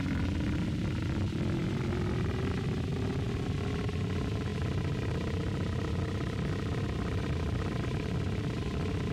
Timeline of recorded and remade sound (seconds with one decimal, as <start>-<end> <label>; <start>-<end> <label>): 0.0-9.1 recorded